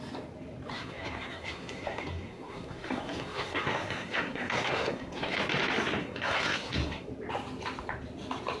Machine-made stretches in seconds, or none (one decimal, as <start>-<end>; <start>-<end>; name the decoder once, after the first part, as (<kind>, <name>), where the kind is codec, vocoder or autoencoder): 0.7-5.4 (codec, SNAC); 6.0-7.1